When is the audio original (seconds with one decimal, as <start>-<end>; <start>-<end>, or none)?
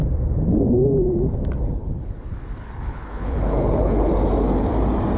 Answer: 0.0-1.8; 4.1-5.2